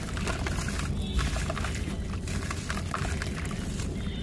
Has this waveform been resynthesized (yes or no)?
no